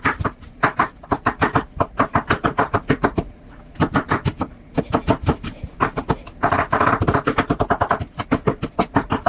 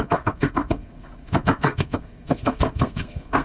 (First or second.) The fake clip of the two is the second